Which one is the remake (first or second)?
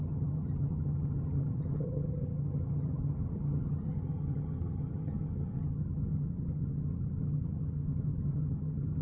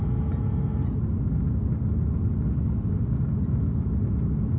first